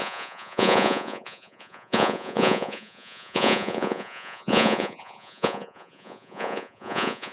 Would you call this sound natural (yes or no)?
no